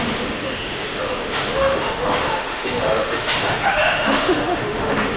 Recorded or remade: remade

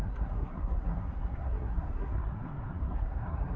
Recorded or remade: remade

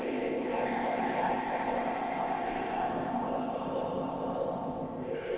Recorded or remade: remade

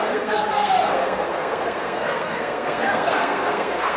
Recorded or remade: remade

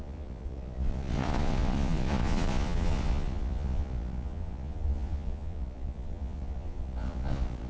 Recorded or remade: remade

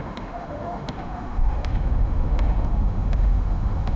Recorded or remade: remade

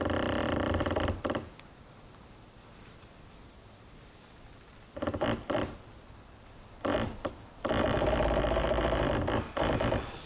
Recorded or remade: recorded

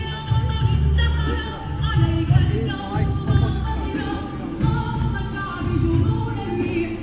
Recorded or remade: recorded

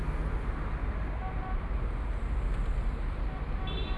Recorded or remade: recorded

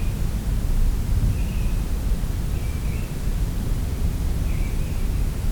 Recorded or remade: recorded